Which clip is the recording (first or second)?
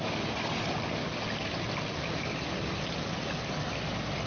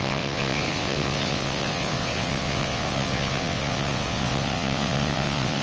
first